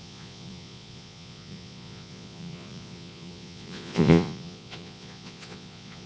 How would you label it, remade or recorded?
remade